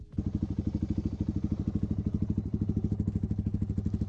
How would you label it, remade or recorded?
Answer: recorded